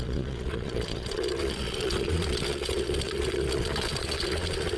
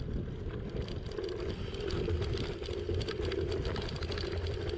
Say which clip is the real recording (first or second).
second